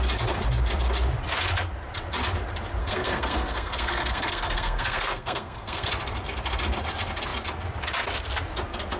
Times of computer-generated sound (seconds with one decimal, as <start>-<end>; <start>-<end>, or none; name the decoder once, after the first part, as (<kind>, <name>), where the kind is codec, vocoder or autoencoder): 2.8-5.9 (codec, SNAC)

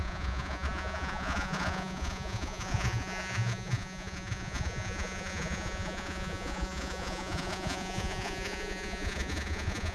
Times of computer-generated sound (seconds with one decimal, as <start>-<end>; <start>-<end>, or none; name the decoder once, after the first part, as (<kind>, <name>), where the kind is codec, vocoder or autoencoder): 0.0-9.9 (vocoder, Vocos)

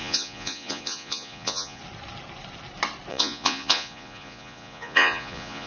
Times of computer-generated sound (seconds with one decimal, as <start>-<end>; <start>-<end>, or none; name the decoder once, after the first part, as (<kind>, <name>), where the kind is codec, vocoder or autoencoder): 0.0-1.8 (vocoder, Vocos); 3.1-5.7

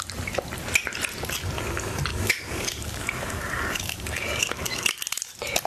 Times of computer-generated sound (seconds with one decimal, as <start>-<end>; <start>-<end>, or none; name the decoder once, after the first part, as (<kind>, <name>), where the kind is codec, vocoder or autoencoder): 2.1-4.8 (codec, DAC)

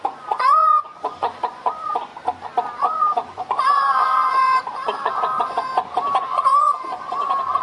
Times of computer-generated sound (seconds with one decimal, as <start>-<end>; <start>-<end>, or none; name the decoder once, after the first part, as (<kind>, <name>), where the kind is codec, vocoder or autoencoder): 0.0-2.1 (vocoder, Vocos); 2.8-5.7; 6.2-7.6

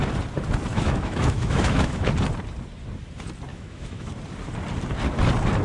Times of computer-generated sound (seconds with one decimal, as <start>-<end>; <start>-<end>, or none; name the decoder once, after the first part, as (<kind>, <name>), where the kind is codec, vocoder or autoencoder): 0.7-2.1 (autoencoder, DAC-VAE); 3.5-4.1